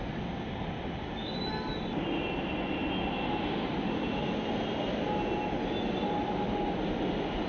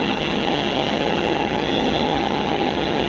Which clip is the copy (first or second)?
second